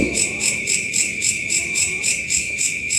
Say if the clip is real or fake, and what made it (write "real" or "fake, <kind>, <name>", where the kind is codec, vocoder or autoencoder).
fake, autoencoder, DAC-VAE